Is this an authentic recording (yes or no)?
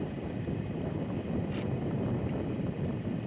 no